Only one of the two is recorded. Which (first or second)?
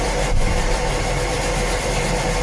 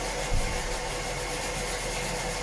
second